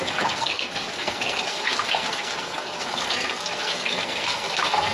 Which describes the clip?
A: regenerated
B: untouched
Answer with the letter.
A